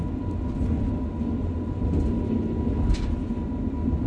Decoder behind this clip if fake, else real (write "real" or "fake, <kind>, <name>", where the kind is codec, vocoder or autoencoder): real